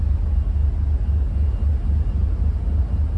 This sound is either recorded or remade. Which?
recorded